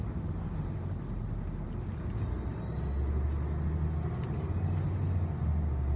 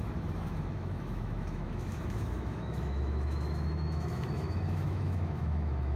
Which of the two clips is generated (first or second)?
second